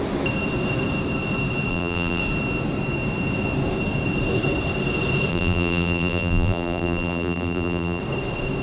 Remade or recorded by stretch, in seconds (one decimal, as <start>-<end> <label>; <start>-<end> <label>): 0.0-1.7 recorded; 1.7-2.2 remade; 2.2-5.3 recorded; 5.3-8.0 remade; 8.0-8.6 recorded